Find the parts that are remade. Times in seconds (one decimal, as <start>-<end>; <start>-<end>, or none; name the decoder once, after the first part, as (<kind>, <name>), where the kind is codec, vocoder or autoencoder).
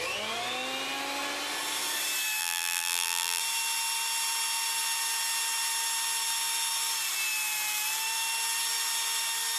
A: 2.4-3.4 (vocoder, BigVGAN v2)